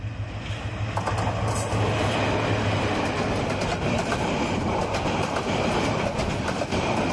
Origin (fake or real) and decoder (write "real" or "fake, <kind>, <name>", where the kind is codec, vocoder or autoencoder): real